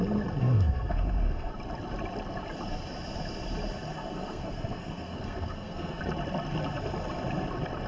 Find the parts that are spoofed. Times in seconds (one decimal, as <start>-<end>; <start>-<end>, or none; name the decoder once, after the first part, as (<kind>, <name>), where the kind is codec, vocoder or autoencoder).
0.4-1.5 (codec, SNAC); 4.0-6.0